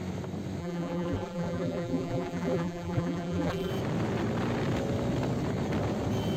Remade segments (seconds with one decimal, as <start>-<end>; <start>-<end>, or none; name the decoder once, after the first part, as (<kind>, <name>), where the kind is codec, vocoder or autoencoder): 0.6-3.7 (vocoder, BigVGAN v2)